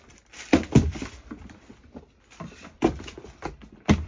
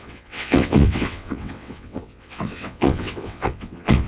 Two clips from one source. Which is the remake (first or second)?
second